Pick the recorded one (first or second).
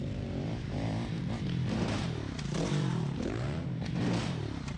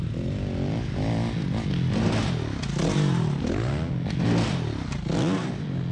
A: second